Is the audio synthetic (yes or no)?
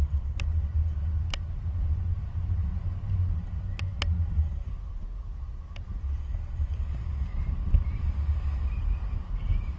no